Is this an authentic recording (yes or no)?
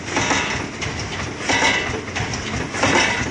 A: yes